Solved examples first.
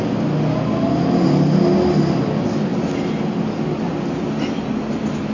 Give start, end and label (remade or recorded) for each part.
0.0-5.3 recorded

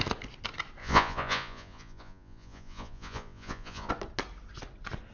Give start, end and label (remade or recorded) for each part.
0.0-0.8 recorded; 0.8-3.9 remade; 3.9-5.1 recorded